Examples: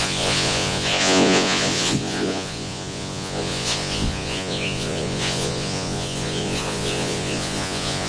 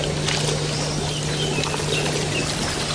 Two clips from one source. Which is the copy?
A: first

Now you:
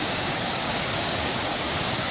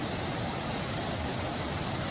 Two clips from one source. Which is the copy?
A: first